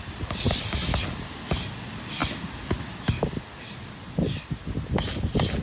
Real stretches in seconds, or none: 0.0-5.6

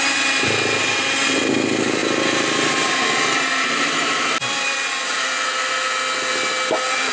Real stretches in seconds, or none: 0.0-7.1

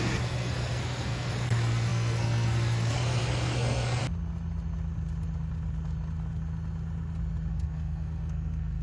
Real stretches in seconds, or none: 4.0-7.5

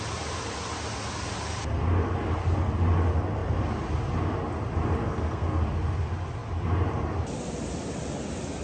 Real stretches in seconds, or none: 0.0-5.0; 5.6-8.6

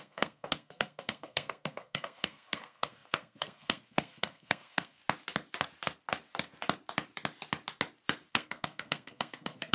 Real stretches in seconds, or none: 5.0-8.3